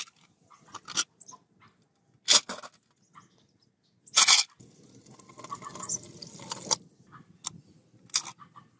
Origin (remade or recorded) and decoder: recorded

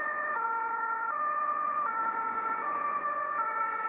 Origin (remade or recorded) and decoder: remade, vocoder, Vocos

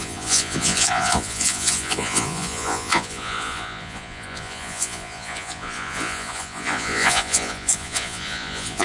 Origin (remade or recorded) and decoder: remade, vocoder, Vocos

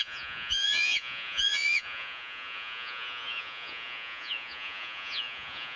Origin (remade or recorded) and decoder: remade, vocoder, Vocos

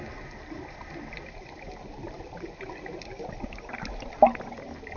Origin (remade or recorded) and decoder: recorded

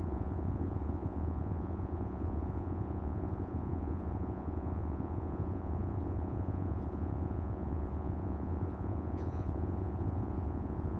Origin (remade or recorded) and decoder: remade, vocoder, Vocos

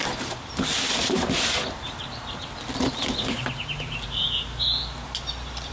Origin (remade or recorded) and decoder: recorded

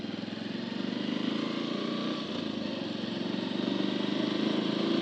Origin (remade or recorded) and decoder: recorded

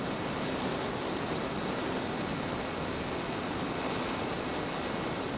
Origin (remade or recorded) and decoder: recorded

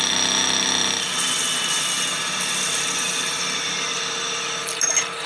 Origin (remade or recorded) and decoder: recorded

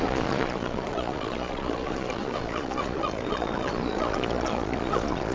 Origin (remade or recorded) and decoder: remade, vocoder, Vocos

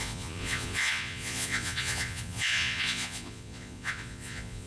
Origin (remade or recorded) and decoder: remade, vocoder, Vocos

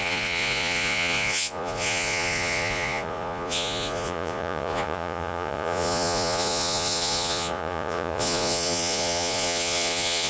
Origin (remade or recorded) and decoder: remade, vocoder, Vocos